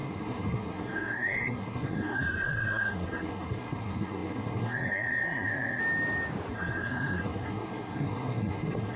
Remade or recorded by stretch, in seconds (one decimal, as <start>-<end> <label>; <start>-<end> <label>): 0.0-5.8 remade; 5.8-6.5 recorded; 6.5-9.0 remade